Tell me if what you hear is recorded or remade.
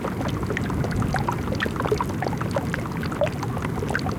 recorded